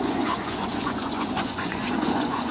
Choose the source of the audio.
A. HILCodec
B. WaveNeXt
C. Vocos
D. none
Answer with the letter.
C